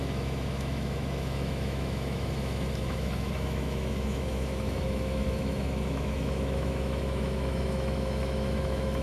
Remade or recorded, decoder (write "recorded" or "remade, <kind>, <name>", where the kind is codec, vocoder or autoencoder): remade, autoencoder, DAC-VAE